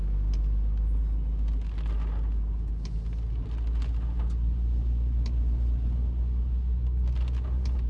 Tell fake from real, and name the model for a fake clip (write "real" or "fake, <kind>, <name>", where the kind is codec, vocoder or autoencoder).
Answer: real